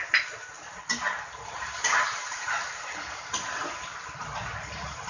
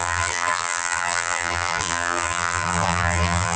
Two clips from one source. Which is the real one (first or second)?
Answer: first